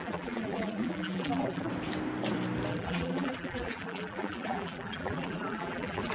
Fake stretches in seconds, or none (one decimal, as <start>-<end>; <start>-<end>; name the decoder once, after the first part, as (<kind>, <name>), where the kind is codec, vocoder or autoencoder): 0.0-1.7 (vocoder, BigVGAN v2); 2.7-6.1